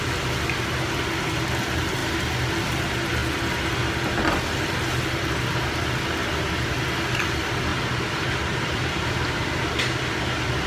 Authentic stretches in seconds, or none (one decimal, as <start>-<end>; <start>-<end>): 0.0-7.7; 9.5-10.7